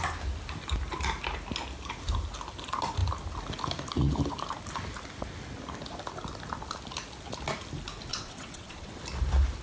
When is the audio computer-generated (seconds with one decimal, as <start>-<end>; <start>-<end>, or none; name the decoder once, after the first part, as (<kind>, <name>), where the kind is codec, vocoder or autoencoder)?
8.1-9.0 (vocoder, WaveNeXt)